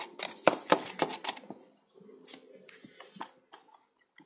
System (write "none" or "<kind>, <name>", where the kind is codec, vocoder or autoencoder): none